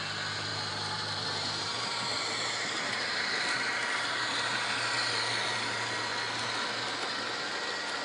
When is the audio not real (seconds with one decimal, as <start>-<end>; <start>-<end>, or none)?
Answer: 0.5-5.1